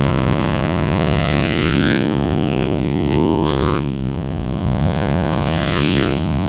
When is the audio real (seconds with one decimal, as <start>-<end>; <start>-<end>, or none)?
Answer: none